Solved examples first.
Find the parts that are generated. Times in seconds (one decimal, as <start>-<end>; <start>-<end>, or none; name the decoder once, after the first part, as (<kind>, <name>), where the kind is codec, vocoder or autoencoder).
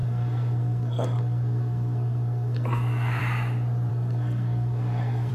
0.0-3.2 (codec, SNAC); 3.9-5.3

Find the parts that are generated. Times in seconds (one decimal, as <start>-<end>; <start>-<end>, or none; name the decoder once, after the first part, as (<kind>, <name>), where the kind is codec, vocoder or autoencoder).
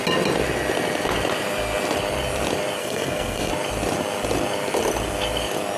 2.8-3.5 (codec, SNAC)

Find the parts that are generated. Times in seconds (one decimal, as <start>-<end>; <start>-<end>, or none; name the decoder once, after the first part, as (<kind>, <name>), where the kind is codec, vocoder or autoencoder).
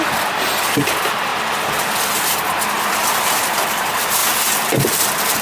none